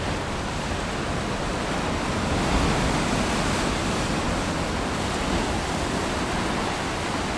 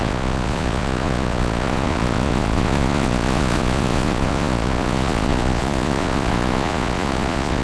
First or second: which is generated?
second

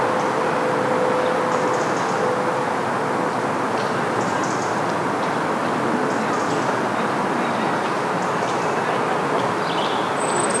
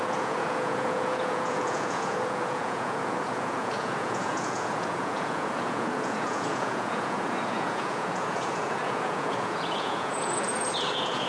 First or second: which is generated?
second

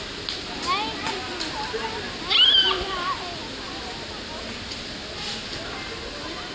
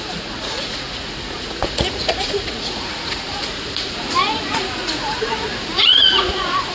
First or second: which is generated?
second